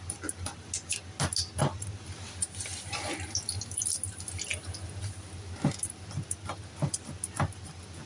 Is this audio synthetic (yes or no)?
no